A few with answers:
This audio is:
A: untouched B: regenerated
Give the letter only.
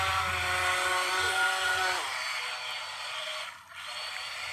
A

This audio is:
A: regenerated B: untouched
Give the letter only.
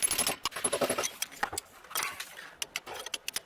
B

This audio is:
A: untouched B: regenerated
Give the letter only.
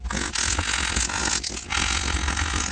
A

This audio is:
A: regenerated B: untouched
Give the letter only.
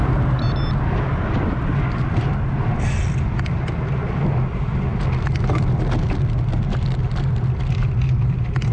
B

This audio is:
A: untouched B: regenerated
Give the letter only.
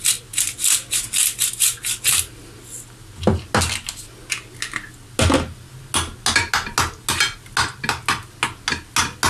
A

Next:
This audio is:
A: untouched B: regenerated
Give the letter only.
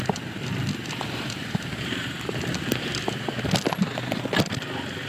A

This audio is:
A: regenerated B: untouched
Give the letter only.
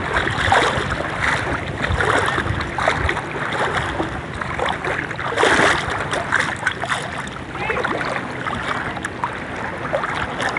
B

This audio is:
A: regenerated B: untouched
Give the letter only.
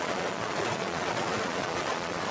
A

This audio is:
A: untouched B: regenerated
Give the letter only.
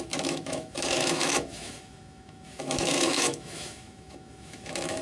B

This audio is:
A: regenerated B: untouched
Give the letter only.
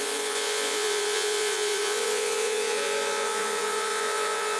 A